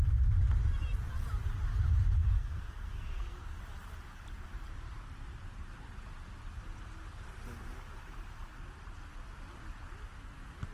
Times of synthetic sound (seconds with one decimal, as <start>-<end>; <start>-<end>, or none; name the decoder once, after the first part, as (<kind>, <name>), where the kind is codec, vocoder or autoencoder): 2.2-3.6 (codec, SNAC)